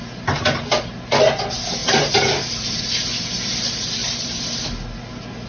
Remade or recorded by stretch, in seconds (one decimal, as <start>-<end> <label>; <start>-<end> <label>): 0.0-1.8 recorded; 1.8-2.8 remade; 2.8-4.0 recorded; 4.0-4.6 remade; 4.6-5.5 recorded